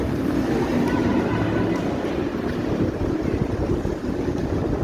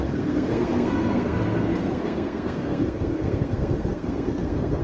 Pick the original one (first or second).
first